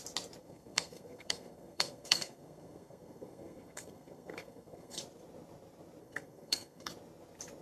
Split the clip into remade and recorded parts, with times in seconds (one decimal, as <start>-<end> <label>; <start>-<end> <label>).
0.0-0.4 recorded; 0.4-5.0 remade; 5.0-6.0 recorded; 6.0-6.9 remade; 6.9-7.6 recorded